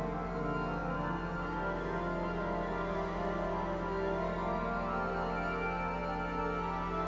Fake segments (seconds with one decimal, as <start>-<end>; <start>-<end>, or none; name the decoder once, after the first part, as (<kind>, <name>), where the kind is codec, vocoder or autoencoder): none